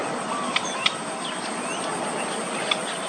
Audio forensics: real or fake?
real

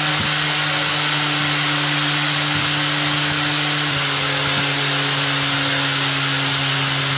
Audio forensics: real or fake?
real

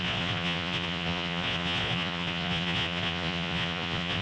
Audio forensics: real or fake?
fake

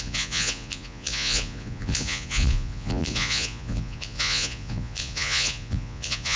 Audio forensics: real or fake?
fake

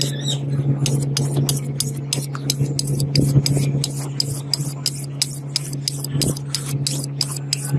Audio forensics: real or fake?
real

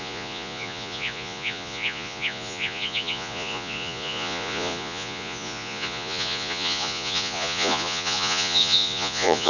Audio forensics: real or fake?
fake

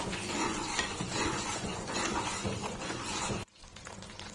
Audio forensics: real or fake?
fake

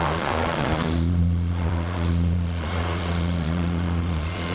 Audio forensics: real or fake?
fake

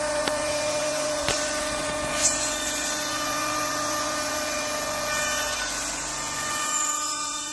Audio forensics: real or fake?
fake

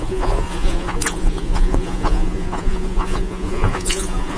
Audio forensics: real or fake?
fake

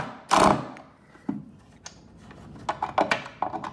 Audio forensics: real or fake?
real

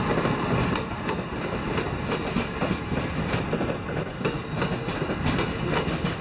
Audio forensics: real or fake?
real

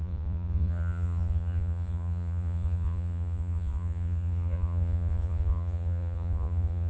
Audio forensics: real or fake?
fake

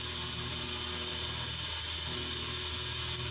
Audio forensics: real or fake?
real